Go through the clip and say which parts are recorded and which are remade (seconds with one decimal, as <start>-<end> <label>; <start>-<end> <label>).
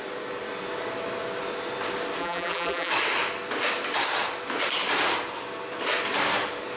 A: 0.0-2.2 recorded; 2.2-2.9 remade; 2.9-6.8 recorded